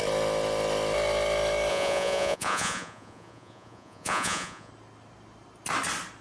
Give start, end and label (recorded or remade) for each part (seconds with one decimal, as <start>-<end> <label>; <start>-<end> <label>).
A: 0.0-1.7 recorded; 1.7-4.7 remade; 4.7-6.2 recorded